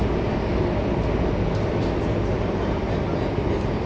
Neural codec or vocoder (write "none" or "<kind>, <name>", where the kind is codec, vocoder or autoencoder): none